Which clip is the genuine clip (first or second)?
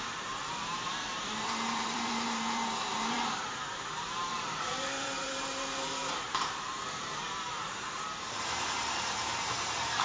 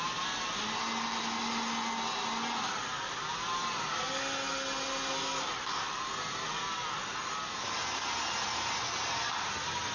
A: second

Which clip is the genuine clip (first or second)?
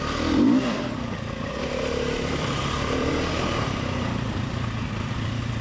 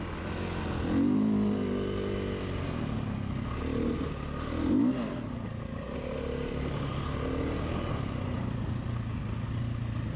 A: second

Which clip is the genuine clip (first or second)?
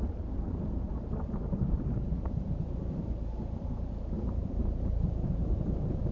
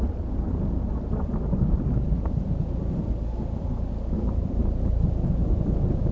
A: second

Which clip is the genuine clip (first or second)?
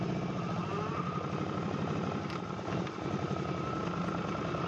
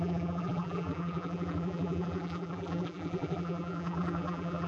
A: first